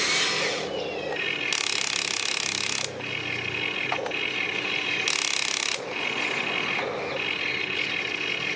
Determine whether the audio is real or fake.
real